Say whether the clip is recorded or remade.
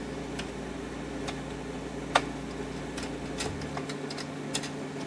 recorded